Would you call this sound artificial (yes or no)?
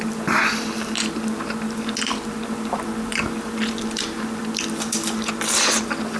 yes